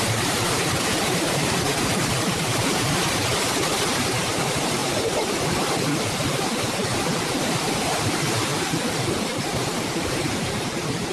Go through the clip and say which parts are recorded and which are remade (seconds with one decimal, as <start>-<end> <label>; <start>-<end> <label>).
0.0-8.5 remade; 8.5-9.2 recorded; 9.2-11.1 remade